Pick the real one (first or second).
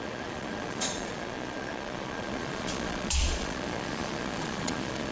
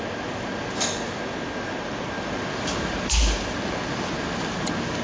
second